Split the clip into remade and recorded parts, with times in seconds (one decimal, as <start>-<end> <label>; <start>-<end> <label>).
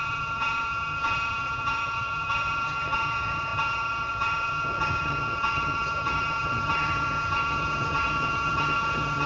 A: 0.0-9.3 remade